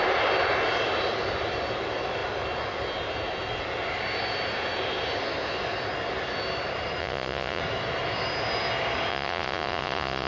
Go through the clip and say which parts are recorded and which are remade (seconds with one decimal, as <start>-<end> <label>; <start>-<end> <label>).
0.0-7.0 recorded; 7.0-7.6 remade; 7.6-9.1 recorded; 9.1-10.3 remade